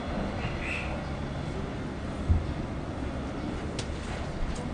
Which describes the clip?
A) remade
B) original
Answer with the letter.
B